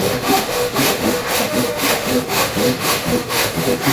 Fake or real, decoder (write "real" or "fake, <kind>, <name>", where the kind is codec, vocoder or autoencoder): fake, autoencoder, DAC-VAE